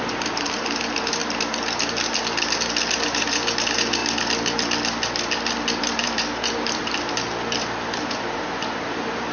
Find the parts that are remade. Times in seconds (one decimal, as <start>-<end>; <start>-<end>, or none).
0.0-1.2; 2.9-4.0; 5.8-9.3